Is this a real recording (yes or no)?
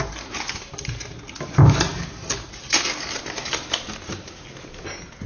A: yes